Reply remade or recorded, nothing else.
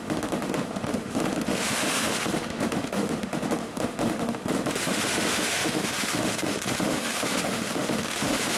remade